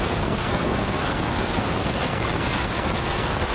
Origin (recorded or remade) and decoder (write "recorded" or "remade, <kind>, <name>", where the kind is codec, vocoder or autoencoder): remade, codec, SNAC